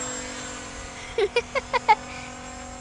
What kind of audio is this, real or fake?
real